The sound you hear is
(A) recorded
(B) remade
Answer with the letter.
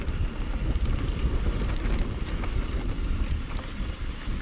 A